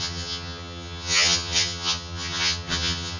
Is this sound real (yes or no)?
no